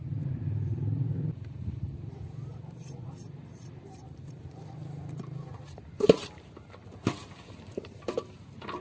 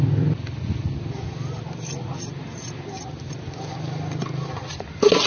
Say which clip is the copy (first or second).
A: first